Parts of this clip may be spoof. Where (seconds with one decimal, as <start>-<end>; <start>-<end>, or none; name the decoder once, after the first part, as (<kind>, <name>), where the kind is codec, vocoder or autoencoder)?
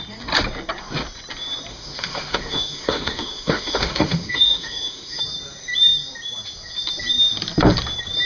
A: 1.7-5.2 (autoencoder, DAC-VAE)